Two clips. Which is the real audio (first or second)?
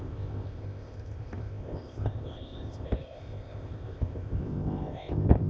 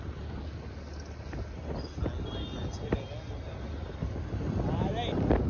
second